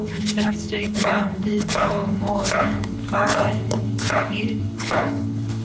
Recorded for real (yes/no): no